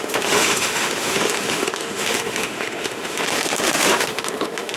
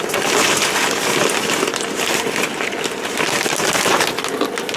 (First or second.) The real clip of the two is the second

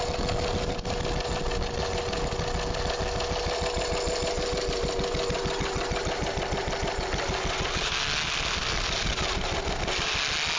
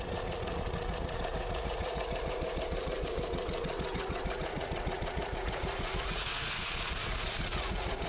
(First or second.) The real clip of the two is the first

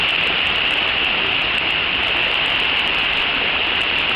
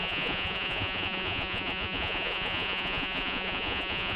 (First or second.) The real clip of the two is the first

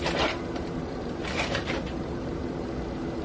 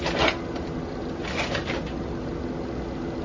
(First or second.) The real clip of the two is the second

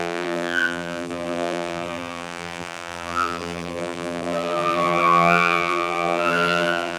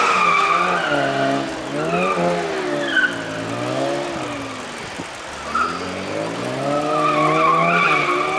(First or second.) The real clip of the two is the second